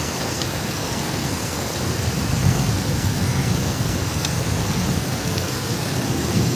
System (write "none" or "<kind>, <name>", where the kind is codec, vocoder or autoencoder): codec, SNAC